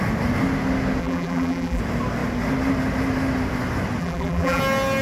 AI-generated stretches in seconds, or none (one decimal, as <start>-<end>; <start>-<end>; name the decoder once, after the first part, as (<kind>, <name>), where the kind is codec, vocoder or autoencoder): 1.0-1.8 (vocoder, BigVGAN v2); 4.0-4.6